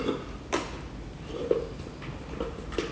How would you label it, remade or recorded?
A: recorded